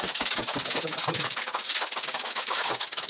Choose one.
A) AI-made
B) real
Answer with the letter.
A